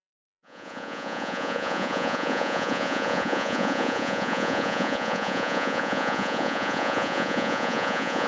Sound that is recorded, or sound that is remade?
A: remade